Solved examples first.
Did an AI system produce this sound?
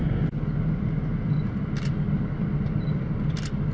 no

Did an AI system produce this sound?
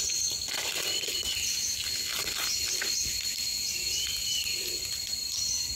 no